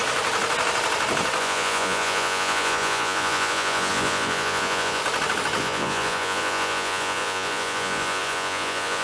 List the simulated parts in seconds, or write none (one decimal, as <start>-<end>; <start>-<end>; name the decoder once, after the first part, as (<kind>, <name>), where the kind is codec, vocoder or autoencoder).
1.4-5.0 (vocoder, Vocos); 5.6-9.0